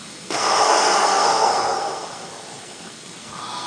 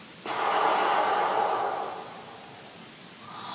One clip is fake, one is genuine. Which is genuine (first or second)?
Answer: second